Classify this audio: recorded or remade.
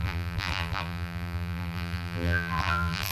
remade